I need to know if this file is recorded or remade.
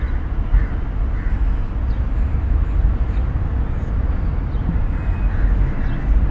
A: recorded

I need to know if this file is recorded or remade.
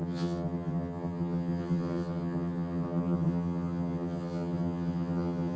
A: remade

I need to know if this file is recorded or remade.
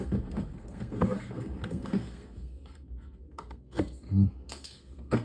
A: remade